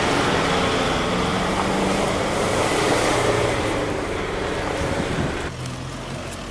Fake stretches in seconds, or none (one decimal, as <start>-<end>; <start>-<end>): 1.3-5.2